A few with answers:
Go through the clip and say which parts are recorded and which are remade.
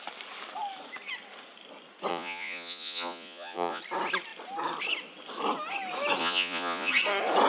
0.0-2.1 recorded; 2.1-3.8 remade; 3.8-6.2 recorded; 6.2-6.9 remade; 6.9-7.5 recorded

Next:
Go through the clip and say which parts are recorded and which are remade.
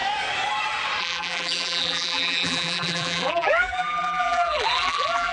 0.0-1.0 recorded; 1.0-5.3 remade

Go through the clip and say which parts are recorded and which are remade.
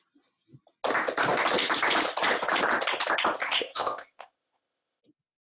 0.0-3.4 recorded; 3.4-5.0 remade; 5.0-5.4 recorded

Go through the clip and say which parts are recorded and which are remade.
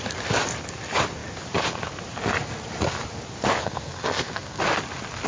0.0-3.6 recorded; 3.6-4.6 remade; 4.6-5.3 recorded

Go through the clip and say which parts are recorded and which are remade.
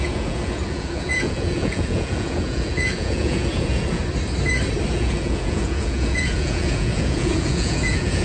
0.0-4.0 remade; 4.0-4.9 recorded; 4.9-8.2 remade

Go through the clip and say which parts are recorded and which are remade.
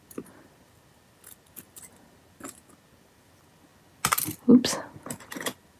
0.0-5.8 recorded